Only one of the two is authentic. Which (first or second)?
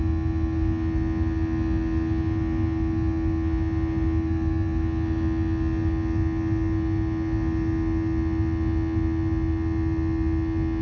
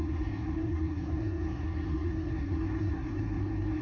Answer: first